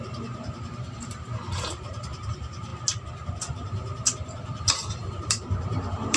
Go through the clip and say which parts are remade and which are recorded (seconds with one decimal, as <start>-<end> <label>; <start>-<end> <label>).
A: 0.0-2.7 remade; 2.7-4.9 recorded; 4.9-6.2 remade